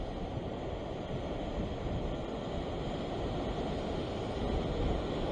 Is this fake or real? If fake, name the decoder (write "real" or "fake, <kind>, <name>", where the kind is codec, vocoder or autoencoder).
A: real